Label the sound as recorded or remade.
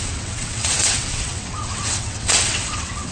remade